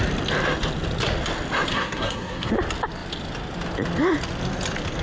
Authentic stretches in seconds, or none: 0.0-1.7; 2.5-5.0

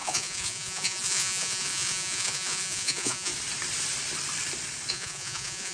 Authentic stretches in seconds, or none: 3.3-4.9

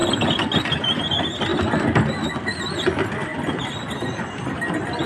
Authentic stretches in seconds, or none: 0.6-1.5; 2.0-5.1

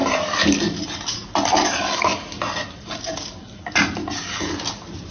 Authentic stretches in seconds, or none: 0.0-5.1

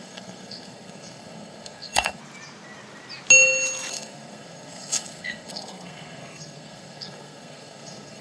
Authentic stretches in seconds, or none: 2.2-3.9

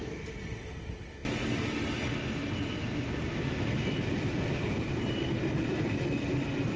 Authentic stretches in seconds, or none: 0.0-6.8